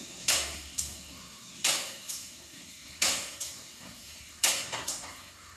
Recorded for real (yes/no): no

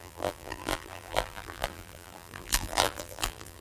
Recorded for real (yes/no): no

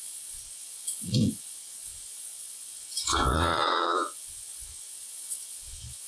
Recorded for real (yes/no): no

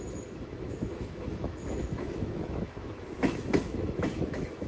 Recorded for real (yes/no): no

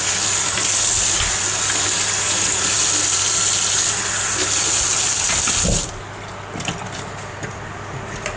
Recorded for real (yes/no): yes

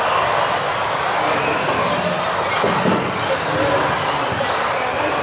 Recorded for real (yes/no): yes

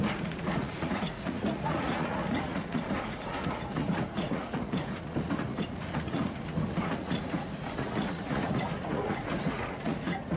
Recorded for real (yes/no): no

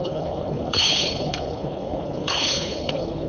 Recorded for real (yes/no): no